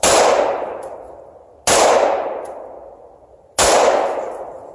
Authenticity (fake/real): real